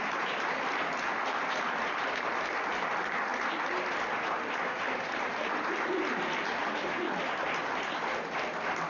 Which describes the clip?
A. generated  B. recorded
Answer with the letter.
B